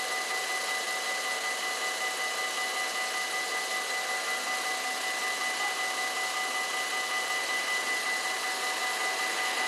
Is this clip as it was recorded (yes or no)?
yes